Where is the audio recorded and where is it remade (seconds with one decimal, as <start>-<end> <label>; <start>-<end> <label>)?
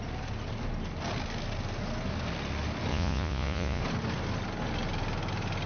0.0-2.9 recorded; 2.9-3.8 remade; 3.8-5.7 recorded